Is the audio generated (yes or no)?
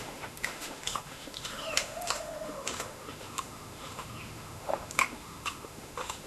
yes